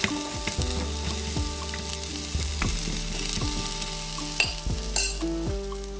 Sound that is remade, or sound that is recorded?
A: recorded